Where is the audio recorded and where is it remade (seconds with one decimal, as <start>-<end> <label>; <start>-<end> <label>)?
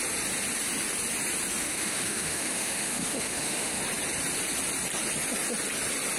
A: 0.0-1.6 recorded; 1.6-3.8 remade; 3.8-6.2 recorded